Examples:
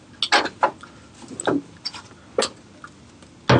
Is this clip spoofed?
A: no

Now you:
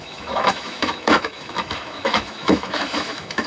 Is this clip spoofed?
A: yes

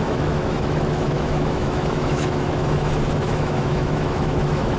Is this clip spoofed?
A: yes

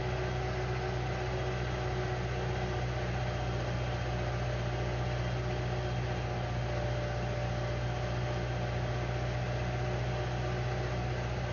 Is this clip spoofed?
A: no